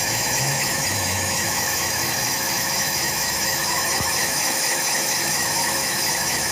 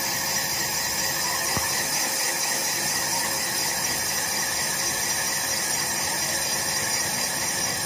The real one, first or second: second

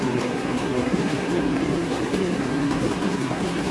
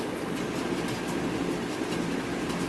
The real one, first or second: second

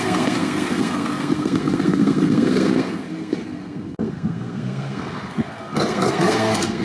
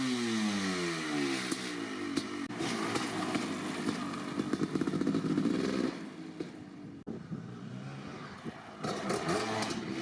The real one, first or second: second